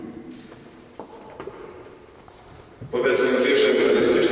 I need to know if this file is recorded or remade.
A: remade